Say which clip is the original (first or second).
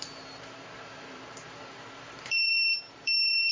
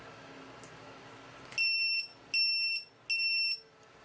second